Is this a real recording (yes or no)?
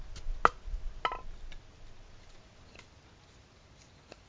yes